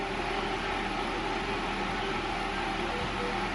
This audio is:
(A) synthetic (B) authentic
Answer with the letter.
B